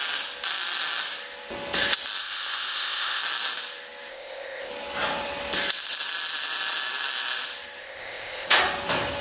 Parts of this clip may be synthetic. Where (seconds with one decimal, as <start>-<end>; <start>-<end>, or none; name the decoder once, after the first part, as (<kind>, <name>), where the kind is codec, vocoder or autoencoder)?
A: 2.2-3.2 (codec, ZipCodec); 4.1-4.7; 7.8-8.6

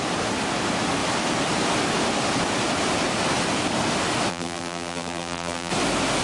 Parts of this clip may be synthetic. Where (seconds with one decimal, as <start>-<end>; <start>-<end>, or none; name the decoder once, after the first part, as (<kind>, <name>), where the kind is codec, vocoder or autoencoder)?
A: 4.3-5.7 (vocoder, BigVGAN v2)

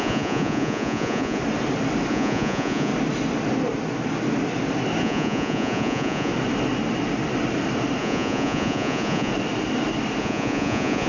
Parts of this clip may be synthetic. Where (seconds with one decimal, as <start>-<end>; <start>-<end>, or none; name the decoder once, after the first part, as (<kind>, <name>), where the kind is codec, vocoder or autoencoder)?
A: 0.0-1.4 (vocoder, Vocos); 2.1-2.9; 5.0-6.3; 8.0-9.3; 10.2-11.1